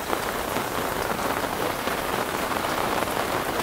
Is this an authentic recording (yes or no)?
no